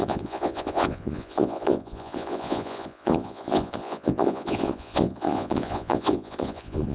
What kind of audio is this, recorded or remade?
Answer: remade